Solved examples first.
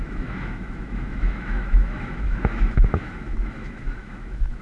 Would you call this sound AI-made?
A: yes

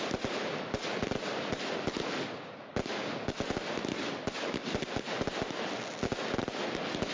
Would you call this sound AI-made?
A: no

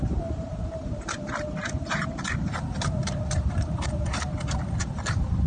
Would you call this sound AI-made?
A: yes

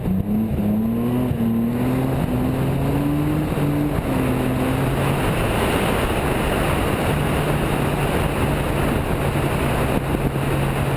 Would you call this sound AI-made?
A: no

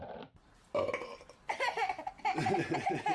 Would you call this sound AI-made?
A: no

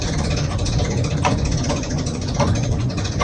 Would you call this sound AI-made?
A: yes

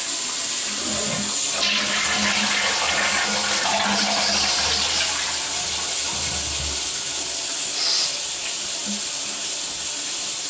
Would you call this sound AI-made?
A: no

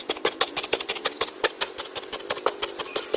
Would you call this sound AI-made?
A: no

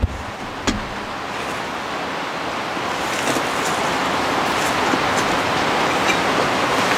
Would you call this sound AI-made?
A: no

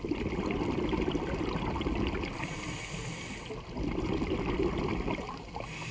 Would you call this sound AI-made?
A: no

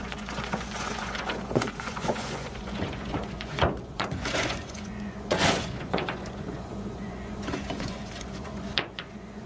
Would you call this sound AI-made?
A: yes